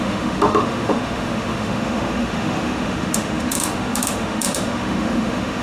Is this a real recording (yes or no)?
no